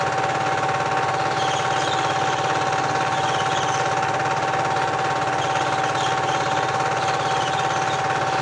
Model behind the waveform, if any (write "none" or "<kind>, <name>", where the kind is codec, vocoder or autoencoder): none